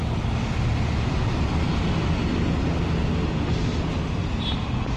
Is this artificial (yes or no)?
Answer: no